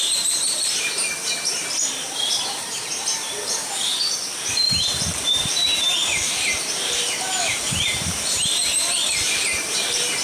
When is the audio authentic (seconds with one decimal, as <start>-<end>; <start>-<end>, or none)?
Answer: 3.9-4.4; 8.6-9.1